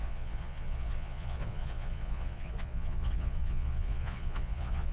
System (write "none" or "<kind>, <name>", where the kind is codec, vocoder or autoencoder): vocoder, Vocos